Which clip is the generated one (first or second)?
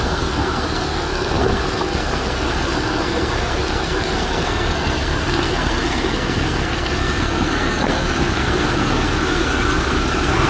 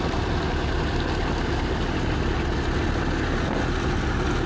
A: first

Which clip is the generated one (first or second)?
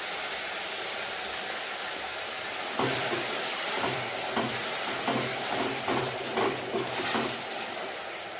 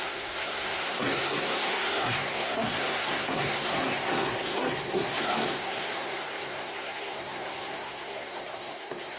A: second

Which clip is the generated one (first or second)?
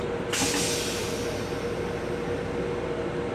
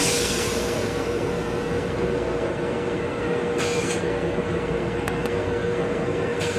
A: second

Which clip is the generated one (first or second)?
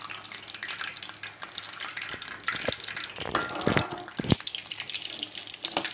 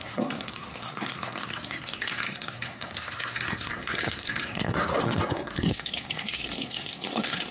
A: second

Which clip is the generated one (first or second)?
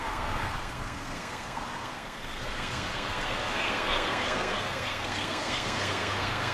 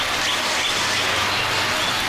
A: first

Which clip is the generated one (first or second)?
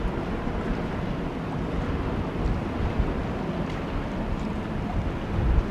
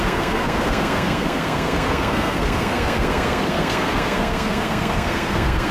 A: second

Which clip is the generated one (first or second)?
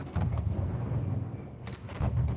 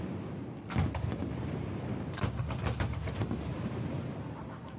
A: first